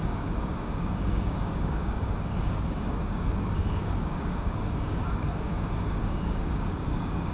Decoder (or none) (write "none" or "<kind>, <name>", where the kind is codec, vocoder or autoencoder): codec, DAC